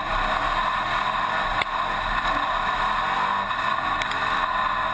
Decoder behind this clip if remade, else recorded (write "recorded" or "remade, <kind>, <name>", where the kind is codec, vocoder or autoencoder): recorded